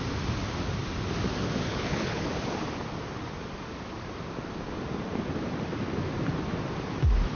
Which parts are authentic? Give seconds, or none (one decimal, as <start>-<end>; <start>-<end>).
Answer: 0.0-1.7; 2.3-7.3